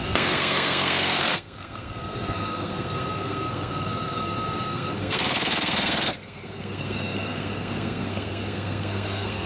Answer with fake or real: fake